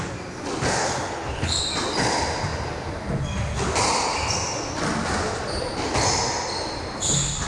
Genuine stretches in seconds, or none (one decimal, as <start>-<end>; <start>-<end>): 0.0-0.8; 1.6-7.5